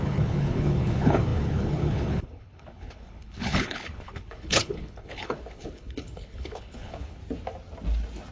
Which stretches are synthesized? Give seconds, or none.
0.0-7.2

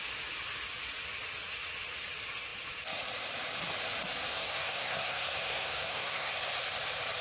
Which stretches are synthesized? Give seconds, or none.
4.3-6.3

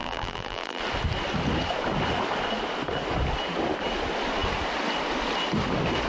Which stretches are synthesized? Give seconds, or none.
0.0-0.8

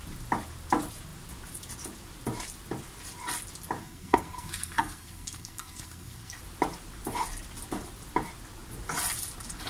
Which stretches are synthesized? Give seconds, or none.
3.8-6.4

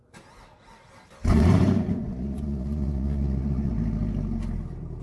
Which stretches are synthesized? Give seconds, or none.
1.3-3.7

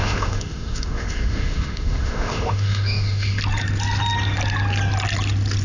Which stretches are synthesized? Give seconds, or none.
0.0-3.4

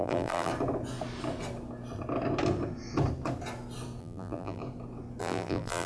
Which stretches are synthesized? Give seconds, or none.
0.0-0.5; 4.0-4.6; 5.2-5.9